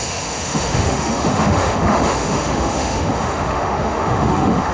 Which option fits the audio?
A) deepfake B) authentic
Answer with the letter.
A